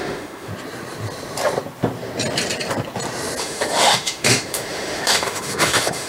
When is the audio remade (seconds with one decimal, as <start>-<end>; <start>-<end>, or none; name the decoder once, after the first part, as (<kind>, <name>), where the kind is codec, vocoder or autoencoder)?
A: 0.0-0.5 (autoencoder, DAC-VAE); 3.4-6.1